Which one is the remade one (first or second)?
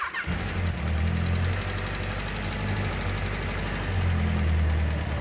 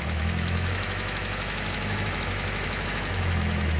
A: second